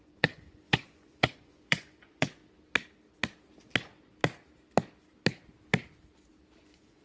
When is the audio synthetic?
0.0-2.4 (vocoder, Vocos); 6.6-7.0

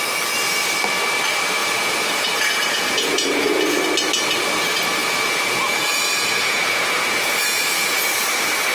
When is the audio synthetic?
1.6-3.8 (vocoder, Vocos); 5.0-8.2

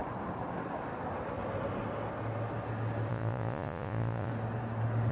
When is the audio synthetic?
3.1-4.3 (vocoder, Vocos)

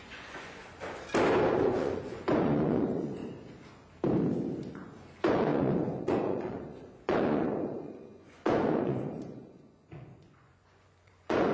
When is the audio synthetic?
0.0-0.6 (vocoder, Vocos); 1.5-3.2; 4.7-11.5